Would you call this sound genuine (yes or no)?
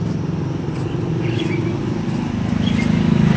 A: yes